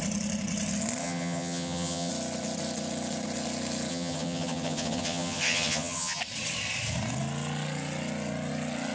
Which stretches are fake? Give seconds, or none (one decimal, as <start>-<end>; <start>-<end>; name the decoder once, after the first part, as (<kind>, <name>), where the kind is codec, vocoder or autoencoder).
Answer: 1.0-2.1 (vocoder, HiFi-GAN); 3.9-6.2

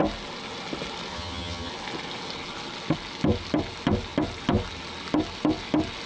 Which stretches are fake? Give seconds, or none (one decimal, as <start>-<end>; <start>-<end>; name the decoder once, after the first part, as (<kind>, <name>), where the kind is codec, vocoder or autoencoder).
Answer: 1.1-1.7 (vocoder, HiFi-GAN)

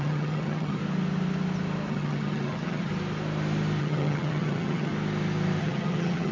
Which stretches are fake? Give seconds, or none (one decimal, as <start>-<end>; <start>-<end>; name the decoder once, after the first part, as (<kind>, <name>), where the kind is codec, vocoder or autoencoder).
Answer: 0.0-0.8 (vocoder, HiFi-GAN); 1.9-2.9; 3.8-4.9; 5.6-6.3

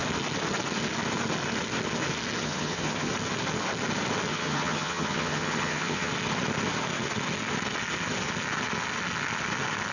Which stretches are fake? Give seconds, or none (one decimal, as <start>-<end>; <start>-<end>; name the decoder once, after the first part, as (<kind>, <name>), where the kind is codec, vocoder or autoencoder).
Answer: 2.4-3.1 (vocoder, HiFi-GAN); 4.3-6.1